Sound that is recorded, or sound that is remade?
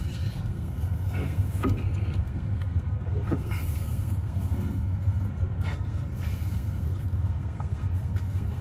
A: remade